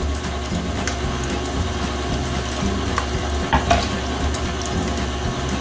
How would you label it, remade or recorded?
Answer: recorded